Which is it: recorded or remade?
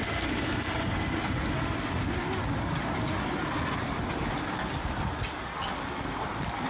recorded